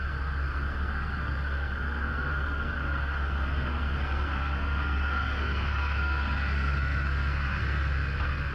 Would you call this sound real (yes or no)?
no